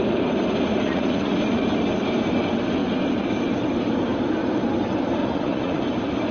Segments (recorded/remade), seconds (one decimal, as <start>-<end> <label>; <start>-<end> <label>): 0.0-0.7 recorded; 0.7-1.4 remade; 1.4-5.2 recorded; 5.2-5.8 remade; 5.8-6.3 recorded